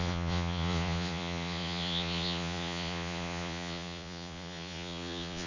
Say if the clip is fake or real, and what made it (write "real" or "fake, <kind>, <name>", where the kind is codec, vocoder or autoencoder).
fake, vocoder, Vocos